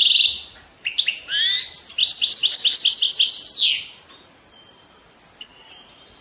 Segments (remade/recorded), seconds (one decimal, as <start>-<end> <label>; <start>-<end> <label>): 0.0-6.2 recorded